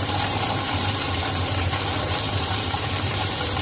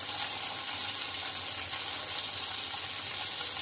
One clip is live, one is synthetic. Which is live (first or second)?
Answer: second